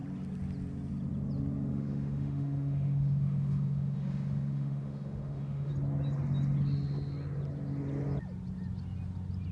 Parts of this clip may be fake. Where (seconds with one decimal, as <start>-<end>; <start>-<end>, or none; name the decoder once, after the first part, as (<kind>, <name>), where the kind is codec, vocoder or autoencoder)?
1.7-5.7 (autoencoder, DAC-VAE)